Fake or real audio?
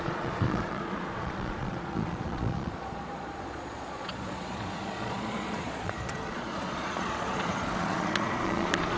fake